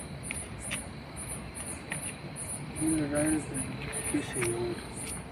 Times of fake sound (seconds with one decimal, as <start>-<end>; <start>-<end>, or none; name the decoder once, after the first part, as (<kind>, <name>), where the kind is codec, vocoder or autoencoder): none